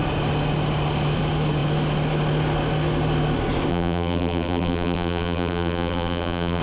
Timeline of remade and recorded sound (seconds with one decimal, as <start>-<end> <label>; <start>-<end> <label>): 0.0-3.7 recorded; 3.7-6.6 remade